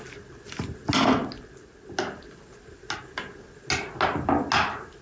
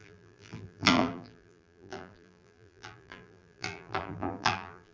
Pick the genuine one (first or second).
first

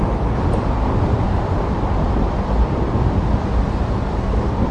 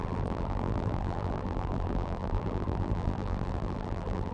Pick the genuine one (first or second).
first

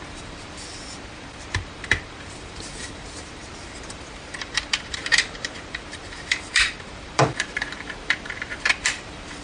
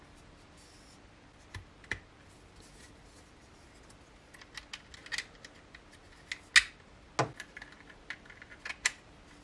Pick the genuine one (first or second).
second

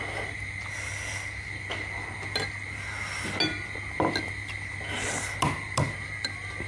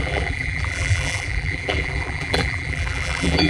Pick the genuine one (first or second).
first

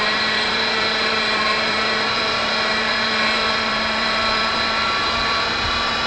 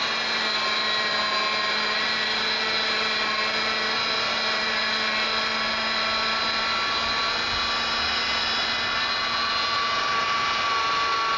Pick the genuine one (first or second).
second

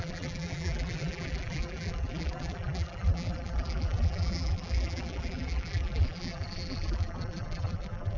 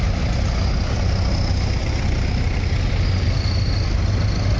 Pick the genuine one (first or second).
second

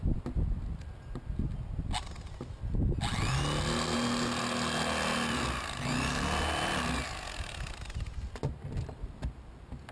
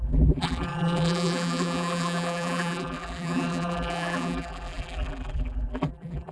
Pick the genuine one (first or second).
first